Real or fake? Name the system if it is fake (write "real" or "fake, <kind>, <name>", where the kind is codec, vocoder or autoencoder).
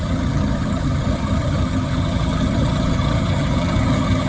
fake, vocoder, HiFi-GAN